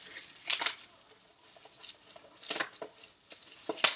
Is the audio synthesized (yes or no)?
no